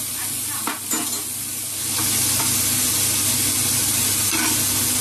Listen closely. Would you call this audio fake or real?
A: real